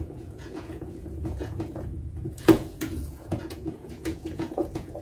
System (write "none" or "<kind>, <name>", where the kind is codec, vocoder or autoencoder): vocoder, Vocos